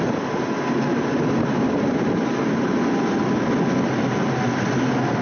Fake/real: real